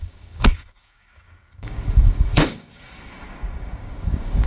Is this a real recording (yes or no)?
no